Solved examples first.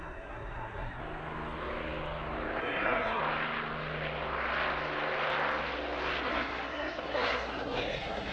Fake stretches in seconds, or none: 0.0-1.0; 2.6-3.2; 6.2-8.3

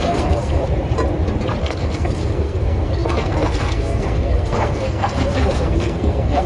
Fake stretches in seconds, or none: 0.0-0.6; 1.6-6.5

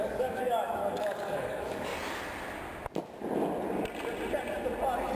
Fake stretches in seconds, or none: 0.0-1.9

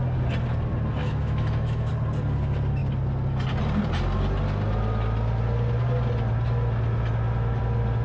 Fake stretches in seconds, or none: 1.0-1.9